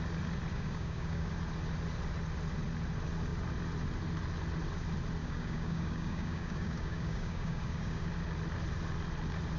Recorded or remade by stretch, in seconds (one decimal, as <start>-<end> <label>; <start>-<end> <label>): 0.0-0.5 recorded; 0.5-1.3 remade; 1.3-5.2 recorded; 5.2-8.1 remade; 8.1-9.6 recorded